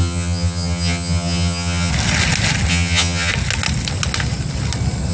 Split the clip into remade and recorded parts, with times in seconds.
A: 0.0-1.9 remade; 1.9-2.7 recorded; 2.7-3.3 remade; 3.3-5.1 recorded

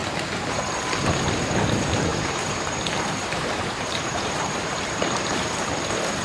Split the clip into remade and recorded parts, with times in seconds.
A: 0.0-2.1 recorded; 2.1-5.5 remade; 5.5-6.2 recorded